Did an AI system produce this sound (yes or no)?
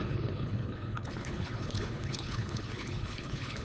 yes